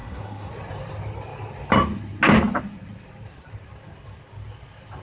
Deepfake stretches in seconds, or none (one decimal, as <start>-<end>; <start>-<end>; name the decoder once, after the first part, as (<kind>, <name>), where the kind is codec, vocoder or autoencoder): 0.0-0.5 (codec, SNAC)

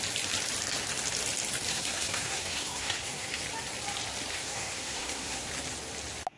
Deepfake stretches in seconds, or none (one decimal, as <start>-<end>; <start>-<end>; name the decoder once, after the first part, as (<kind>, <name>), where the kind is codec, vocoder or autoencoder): 1.7-3.4 (codec, SNAC); 4.3-5.5

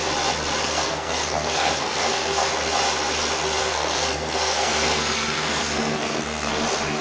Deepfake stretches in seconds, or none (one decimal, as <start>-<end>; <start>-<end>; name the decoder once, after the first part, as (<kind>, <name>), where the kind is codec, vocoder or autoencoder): 0.6-2.5 (codec, SNAC); 3.6-6.5

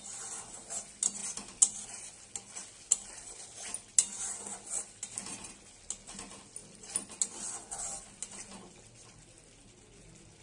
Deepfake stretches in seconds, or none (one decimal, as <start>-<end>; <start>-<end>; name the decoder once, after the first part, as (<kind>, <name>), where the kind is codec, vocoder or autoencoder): none

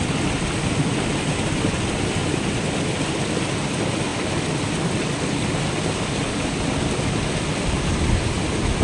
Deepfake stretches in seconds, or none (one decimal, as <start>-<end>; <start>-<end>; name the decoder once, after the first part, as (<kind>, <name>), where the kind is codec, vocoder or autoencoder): none